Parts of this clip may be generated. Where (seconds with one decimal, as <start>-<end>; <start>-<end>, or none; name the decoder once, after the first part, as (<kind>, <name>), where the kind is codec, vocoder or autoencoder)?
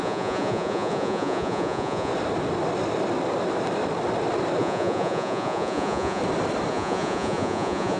0.0-2.1 (vocoder, Vocos); 4.6-6.2; 6.7-8.0